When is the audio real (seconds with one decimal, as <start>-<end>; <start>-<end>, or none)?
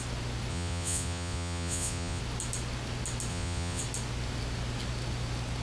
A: 0.0-0.5; 2.2-3.3; 3.8-5.6